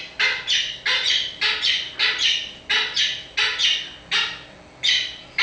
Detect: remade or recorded recorded